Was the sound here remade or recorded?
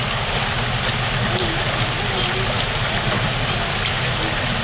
recorded